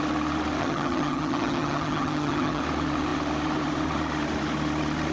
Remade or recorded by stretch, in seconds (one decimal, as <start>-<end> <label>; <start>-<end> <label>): 0.0-0.6 recorded; 0.6-2.6 remade; 2.6-5.1 recorded